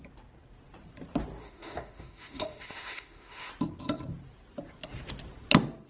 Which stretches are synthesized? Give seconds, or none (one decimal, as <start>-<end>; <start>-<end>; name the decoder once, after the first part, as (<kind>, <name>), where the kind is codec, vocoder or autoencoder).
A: 1.4-3.5 (autoencoder, DAC-VAE)